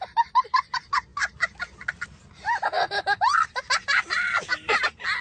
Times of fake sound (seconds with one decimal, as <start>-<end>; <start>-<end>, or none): none